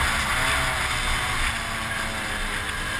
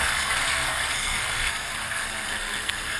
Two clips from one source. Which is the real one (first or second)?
first